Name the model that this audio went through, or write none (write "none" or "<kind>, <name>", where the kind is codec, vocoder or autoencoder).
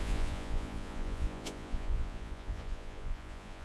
vocoder, Vocos